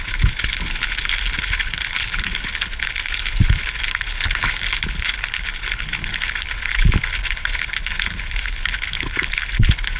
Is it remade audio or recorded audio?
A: remade